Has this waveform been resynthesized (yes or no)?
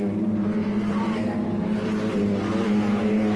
no